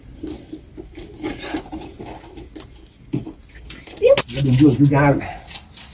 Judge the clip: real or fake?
real